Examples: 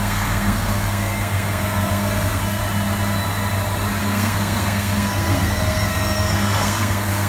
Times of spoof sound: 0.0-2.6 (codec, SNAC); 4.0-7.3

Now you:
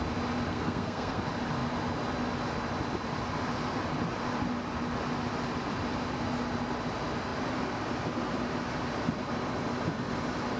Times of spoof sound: 0.5-1.2 (codec, SNAC)

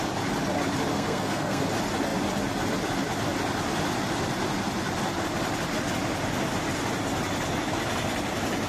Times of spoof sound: 0.9-1.7 (codec, SNAC)

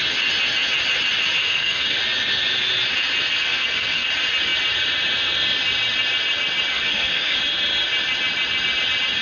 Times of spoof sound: 1.4-2.0 (codec, SNAC); 3.4-4.1; 6.7-7.4

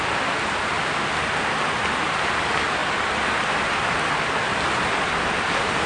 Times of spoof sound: none

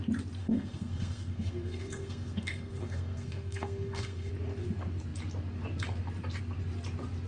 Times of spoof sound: 0.4-4.3 (codec, SNAC)

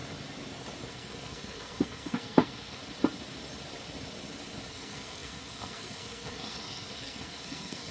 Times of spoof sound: 0.9-2.8 (codec, SNAC); 4.7-7.9